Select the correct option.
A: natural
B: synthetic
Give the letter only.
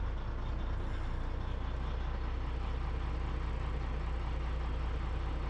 A